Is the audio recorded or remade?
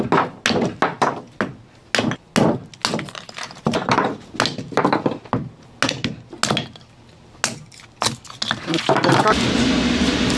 recorded